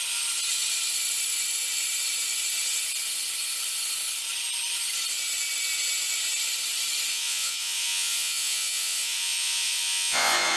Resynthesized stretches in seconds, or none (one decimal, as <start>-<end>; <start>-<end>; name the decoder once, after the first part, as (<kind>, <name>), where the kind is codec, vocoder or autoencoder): 7.1-10.6 (vocoder, Vocos)